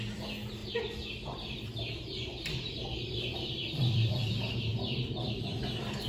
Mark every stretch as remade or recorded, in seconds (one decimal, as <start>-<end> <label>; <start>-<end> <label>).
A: 0.0-0.6 recorded; 0.6-4.3 remade; 4.3-4.7 recorded; 4.7-5.6 remade; 5.6-6.1 recorded